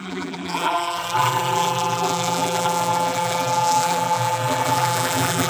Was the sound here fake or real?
fake